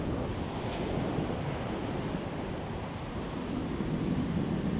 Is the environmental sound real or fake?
real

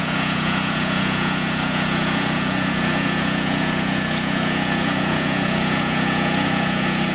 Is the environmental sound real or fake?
fake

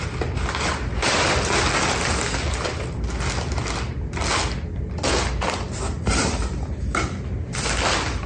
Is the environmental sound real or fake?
real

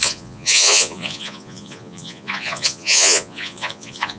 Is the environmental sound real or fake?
fake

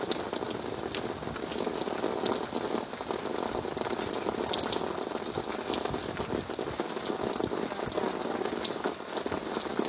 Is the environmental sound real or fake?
real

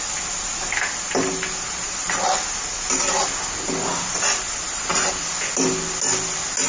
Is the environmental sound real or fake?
real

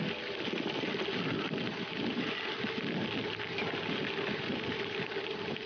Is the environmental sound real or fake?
real